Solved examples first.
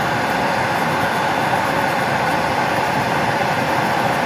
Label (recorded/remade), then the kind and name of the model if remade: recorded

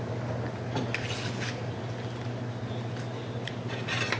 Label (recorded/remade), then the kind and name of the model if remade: recorded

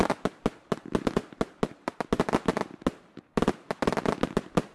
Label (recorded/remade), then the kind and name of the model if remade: recorded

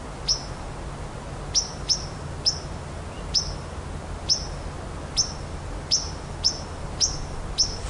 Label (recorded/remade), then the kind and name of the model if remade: recorded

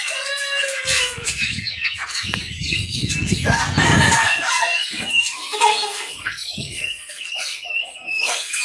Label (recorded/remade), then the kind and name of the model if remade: remade, codec, SNAC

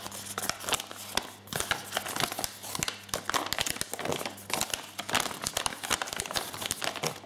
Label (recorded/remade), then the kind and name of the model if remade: recorded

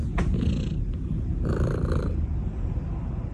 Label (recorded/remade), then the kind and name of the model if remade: recorded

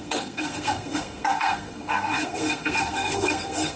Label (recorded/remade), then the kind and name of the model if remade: remade, codec, SNAC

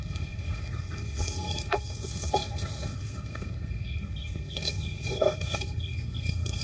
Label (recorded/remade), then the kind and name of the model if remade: remade, codec, SNAC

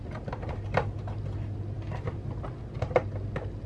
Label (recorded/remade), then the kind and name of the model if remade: recorded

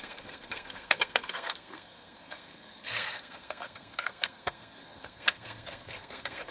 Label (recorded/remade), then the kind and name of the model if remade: remade, codec, SNAC